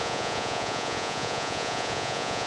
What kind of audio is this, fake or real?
fake